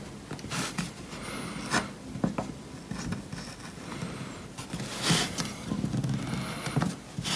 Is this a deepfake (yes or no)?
no